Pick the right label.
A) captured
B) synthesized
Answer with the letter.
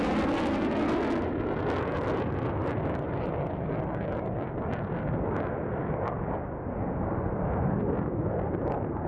A